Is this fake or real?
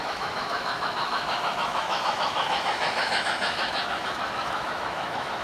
fake